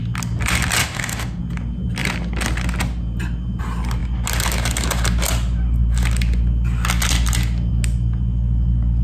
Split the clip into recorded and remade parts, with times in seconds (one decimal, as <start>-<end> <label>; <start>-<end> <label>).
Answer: 0.0-0.8 recorded; 0.8-1.4 remade; 1.4-9.0 recorded